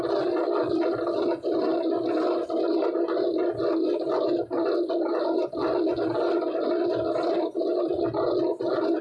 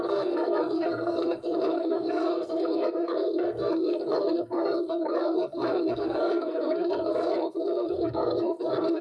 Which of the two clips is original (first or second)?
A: first